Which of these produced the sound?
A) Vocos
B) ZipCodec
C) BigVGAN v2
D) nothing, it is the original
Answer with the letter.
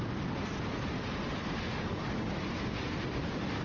D